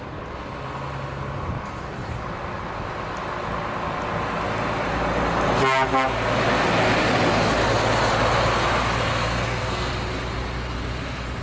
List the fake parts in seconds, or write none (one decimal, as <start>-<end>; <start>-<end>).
9.1-9.9